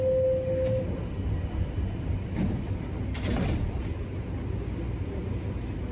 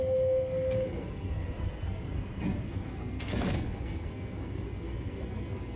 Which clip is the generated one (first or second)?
second